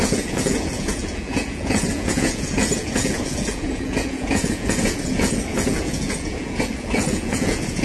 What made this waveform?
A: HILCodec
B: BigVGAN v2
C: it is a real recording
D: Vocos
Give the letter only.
D